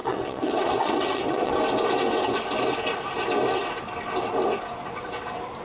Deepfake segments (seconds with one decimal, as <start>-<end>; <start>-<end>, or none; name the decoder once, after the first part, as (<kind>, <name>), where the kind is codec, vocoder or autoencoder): 0.0-1.5 (vocoder, WaveNeXt)